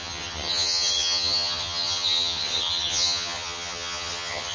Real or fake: fake